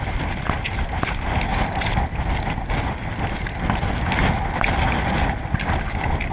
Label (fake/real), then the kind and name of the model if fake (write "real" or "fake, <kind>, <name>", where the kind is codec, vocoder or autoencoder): real